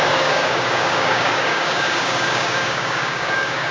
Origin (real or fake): fake